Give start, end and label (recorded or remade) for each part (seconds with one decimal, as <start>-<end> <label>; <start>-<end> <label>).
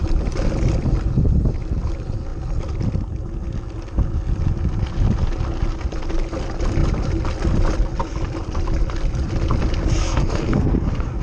0.0-10.0 recorded; 10.0-11.2 remade